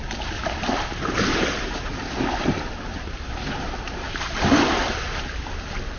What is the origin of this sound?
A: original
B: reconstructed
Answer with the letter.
A